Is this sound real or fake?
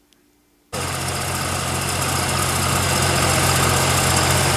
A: real